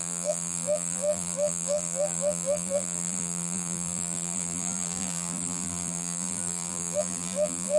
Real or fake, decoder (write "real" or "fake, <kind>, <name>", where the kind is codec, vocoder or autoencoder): fake, vocoder, BigVGAN v2